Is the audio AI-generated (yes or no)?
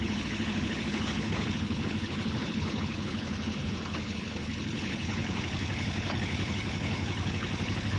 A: yes